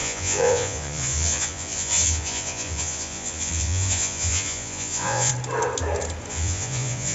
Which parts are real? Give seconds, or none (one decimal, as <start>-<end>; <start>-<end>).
5.3-6.3